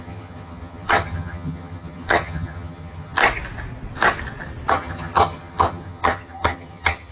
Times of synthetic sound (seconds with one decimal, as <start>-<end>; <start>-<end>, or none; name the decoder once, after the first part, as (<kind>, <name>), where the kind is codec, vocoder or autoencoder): 0.0-3.2 (vocoder, HiFi-GAN); 4.7-7.1